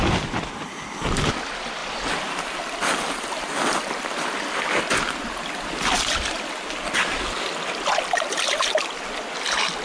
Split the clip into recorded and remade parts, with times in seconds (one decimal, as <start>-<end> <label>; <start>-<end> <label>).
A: 0.0-9.8 recorded